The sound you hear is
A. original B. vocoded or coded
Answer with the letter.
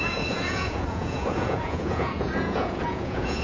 B